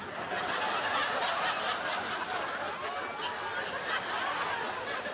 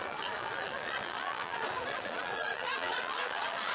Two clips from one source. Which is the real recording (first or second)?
first